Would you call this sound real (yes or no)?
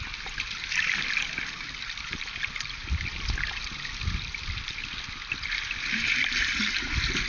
yes